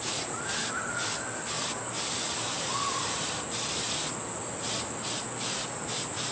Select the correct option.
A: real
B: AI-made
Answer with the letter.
A